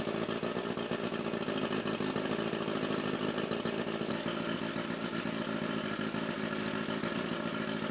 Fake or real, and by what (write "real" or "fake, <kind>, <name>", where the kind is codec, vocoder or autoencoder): real